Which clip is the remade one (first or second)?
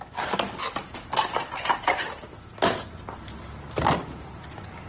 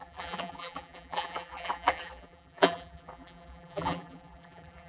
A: second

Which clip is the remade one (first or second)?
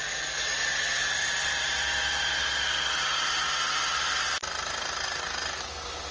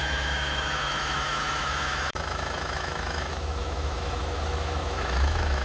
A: second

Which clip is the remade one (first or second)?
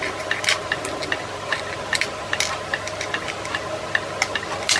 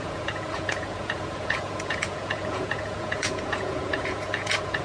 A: second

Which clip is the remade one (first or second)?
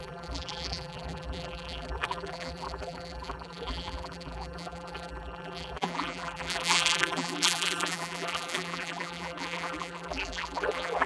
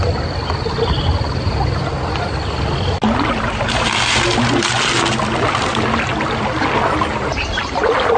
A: first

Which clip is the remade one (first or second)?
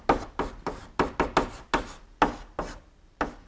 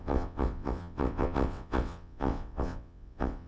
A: second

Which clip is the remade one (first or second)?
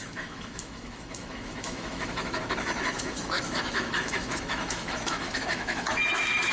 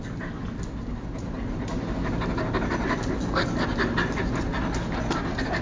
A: first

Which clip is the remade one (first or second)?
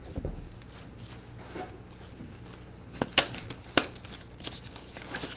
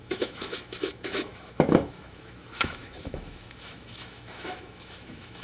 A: second